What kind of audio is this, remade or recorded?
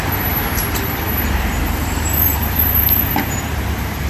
remade